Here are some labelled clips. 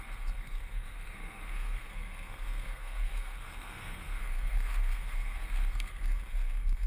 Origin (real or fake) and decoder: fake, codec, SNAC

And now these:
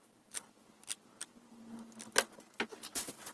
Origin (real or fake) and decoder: real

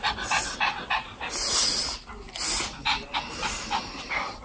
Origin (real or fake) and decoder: real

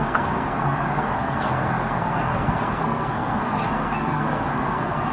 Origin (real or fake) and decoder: fake, codec, SNAC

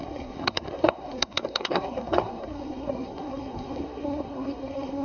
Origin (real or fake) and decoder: fake, codec, SNAC